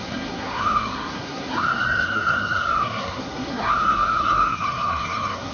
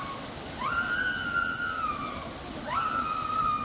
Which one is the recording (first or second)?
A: second